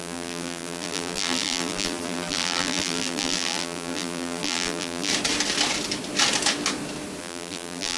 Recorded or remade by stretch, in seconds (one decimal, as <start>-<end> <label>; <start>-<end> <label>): 0.0-5.1 remade; 5.1-7.2 recorded; 7.2-8.0 remade